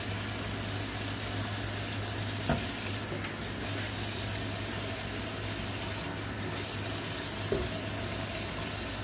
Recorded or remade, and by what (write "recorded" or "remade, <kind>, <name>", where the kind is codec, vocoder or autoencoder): recorded